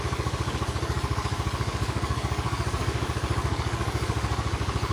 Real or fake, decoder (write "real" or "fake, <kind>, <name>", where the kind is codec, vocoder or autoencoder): fake, codec, DAC